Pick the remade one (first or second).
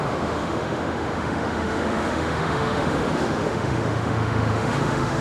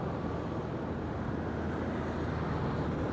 first